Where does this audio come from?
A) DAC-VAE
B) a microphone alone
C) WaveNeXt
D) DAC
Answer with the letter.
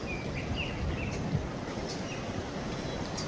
B